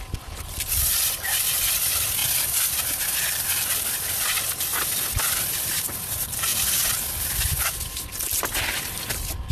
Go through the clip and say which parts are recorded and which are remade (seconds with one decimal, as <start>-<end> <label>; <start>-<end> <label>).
0.0-4.7 remade; 4.7-5.2 recorded; 5.2-6.5 remade; 6.5-8.8 recorded; 8.8-9.5 remade

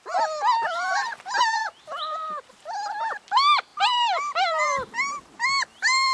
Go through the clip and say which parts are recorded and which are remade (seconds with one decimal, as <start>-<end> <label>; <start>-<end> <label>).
0.0-3.7 recorded; 3.7-4.9 remade; 4.9-6.1 recorded

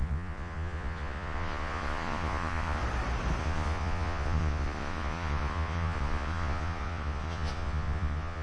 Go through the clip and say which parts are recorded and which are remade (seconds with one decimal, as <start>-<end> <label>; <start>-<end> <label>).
0.0-2.8 remade; 2.8-3.4 recorded; 3.4-8.4 remade